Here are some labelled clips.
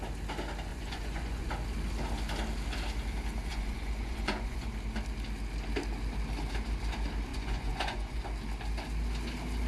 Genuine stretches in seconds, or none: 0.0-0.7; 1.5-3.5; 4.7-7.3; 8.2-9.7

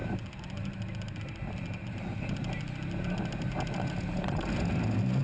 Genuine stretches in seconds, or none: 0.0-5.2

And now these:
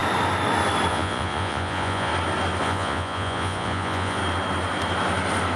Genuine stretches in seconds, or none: 0.0-0.9; 2.1-2.6; 4.2-5.6